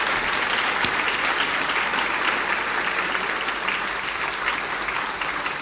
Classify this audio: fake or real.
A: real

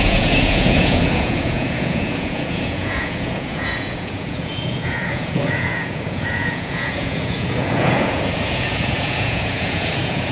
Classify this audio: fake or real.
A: fake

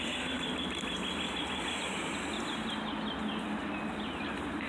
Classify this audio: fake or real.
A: real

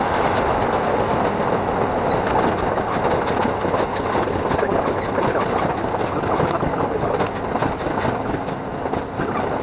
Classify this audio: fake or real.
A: real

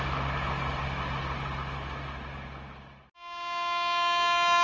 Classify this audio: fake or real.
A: real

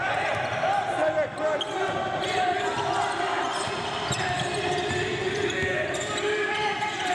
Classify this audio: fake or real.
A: real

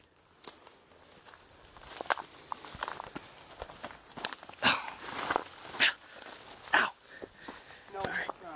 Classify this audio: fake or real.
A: real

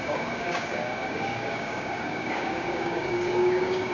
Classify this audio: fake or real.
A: fake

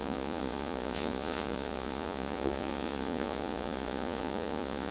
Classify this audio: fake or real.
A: fake